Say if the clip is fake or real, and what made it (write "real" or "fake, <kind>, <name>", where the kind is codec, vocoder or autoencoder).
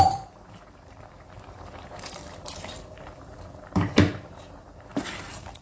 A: fake, vocoder, BigVGAN v2